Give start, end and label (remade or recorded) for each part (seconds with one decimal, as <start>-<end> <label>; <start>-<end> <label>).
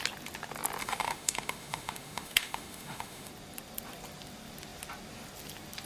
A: 0.0-0.8 recorded; 0.8-3.3 remade; 3.3-5.9 recorded